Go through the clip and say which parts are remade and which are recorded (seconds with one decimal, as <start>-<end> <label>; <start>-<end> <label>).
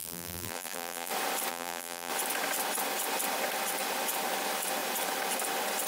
0.0-1.1 remade; 1.1-1.5 recorded; 1.5-2.1 remade; 2.1-5.9 recorded